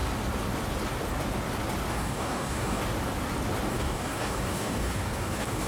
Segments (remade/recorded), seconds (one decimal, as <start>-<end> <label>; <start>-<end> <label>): 0.0-1.9 recorded; 1.9-2.8 remade; 2.8-3.7 recorded; 3.7-5.7 remade